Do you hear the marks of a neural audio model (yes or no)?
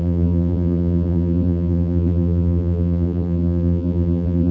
yes